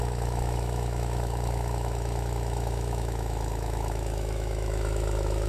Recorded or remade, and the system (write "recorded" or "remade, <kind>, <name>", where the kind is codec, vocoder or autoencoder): remade, autoencoder, DAC-VAE